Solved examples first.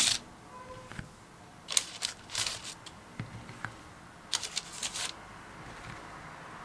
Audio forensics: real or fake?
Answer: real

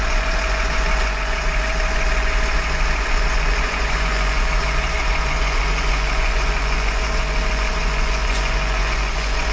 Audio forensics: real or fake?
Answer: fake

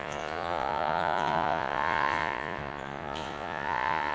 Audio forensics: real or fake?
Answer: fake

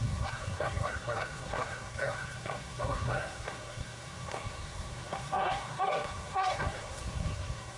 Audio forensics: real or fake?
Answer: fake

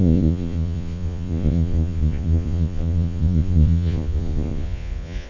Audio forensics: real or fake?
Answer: fake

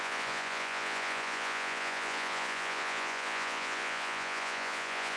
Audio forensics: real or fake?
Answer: fake